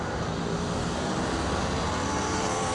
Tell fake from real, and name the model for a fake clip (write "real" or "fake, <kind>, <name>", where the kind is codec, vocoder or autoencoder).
fake, vocoder, BigVGAN v2